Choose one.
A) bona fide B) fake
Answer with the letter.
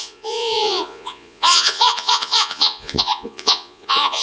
B